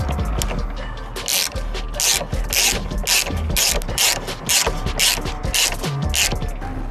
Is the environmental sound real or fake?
real